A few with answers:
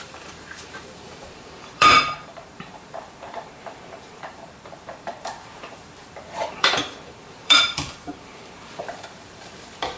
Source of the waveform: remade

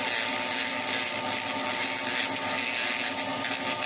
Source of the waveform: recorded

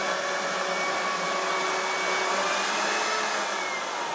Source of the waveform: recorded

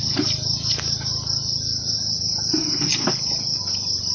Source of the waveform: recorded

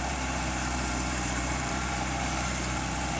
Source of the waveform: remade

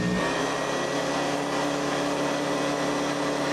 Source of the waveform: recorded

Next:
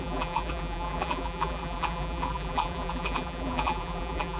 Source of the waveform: remade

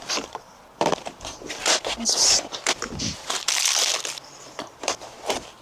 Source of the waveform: remade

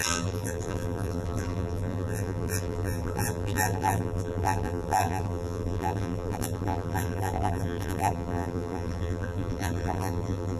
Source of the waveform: remade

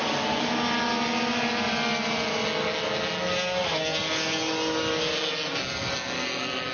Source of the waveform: recorded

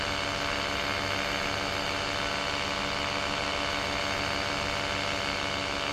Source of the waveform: recorded